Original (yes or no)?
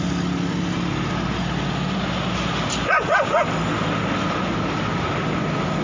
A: yes